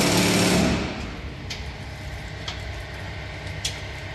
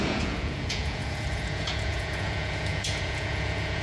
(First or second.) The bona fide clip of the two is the first